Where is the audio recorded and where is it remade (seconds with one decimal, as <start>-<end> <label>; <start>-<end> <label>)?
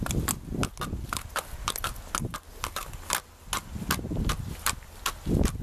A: 0.0-5.6 recorded